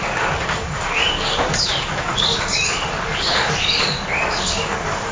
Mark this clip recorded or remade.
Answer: remade